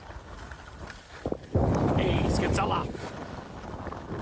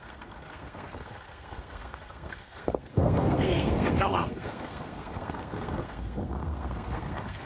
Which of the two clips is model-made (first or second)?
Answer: second